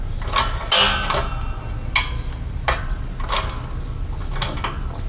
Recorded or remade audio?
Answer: recorded